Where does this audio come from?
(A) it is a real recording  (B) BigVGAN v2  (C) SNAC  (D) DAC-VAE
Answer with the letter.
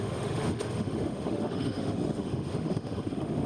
D